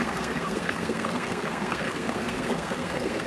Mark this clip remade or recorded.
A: remade